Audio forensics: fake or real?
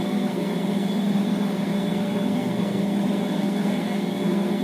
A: fake